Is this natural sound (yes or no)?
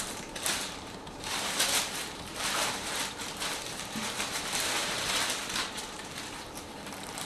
no